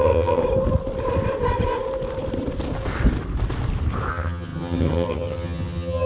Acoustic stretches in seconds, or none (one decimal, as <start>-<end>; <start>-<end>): 0.4-4.1